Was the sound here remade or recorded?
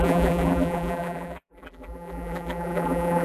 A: remade